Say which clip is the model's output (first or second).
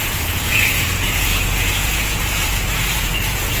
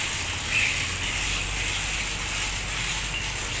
first